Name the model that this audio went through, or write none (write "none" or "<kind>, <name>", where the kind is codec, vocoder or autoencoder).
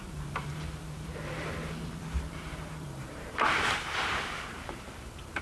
vocoder, BigVGAN v2